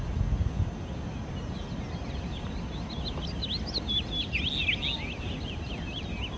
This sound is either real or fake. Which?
real